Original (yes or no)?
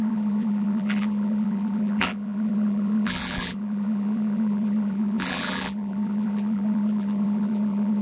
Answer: no